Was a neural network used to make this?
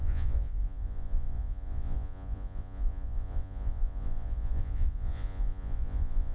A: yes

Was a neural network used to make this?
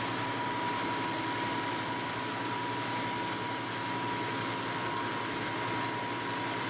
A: no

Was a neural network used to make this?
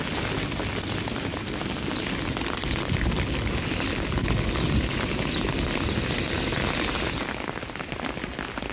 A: no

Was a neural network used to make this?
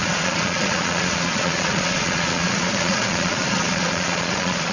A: yes